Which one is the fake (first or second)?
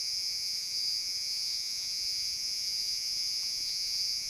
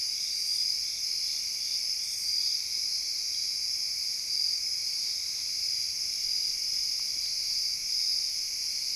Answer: first